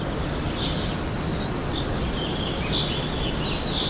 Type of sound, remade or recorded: recorded